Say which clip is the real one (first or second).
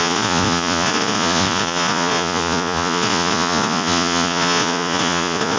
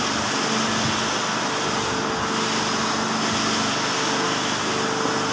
second